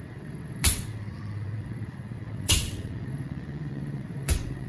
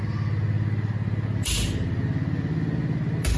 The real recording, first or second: second